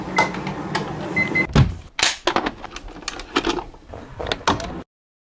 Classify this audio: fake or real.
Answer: real